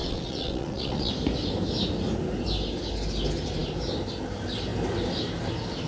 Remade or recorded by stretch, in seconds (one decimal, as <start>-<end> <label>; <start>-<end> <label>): 0.0-1.1 remade; 1.1-5.9 recorded